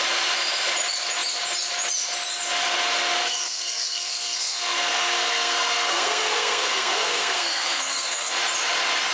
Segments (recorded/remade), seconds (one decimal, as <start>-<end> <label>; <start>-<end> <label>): 0.0-3.2 recorded; 3.2-8.3 remade; 8.3-9.1 recorded